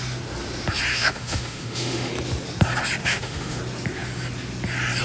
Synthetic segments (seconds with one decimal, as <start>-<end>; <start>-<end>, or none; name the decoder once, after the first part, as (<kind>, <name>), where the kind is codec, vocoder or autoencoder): 0.9-2.1 (autoencoder, DAC-VAE); 3.0-3.6